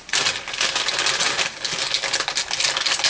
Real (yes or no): yes